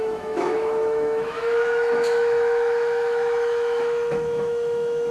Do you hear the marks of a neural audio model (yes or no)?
yes